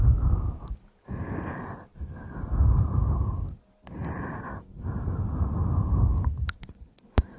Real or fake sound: real